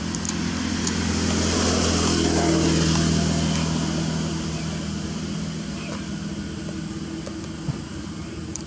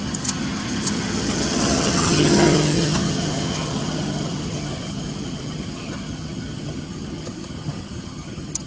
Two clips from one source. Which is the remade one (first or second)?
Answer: second